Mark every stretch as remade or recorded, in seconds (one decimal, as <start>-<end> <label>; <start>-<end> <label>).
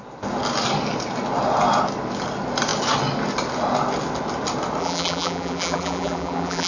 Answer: 0.0-4.8 recorded; 4.8-6.7 remade